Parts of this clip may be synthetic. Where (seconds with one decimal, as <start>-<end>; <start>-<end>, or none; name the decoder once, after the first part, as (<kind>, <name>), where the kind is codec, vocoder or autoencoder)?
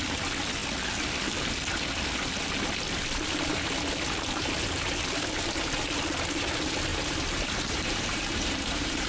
6.9-9.1 (vocoder, BigVGAN v2)